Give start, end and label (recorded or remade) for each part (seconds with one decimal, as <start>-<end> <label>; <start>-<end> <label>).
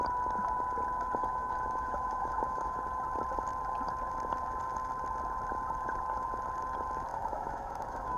0.0-1.2 recorded; 1.2-2.8 remade; 2.8-7.1 recorded; 7.1-8.2 remade